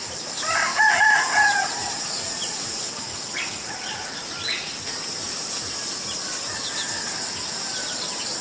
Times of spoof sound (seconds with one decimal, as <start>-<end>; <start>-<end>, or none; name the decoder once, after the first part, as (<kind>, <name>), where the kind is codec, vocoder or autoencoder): 0.7-5.0 (vocoder, Vocos)